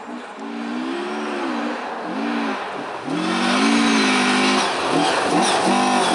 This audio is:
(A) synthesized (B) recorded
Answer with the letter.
B